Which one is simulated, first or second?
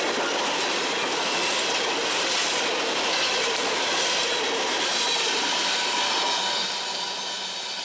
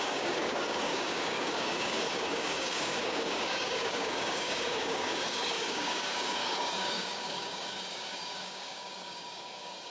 second